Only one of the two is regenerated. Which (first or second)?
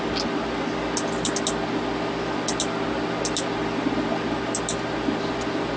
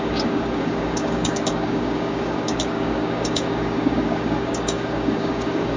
second